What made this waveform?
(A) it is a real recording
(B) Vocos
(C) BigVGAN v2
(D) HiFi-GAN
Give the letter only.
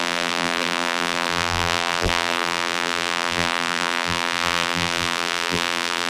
C